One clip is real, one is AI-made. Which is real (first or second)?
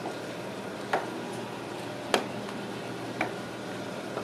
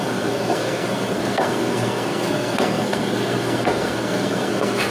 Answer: first